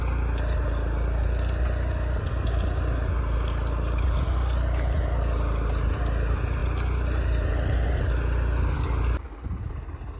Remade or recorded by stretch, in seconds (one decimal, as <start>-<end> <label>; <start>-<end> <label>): 0.0-10.2 recorded